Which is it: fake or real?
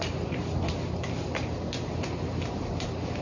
real